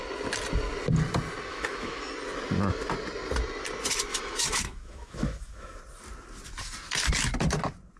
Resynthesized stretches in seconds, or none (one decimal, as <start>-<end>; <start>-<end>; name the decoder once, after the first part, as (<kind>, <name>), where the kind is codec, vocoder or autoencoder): 1.5-2.1 (autoencoder, DAC-VAE); 4.1-5.8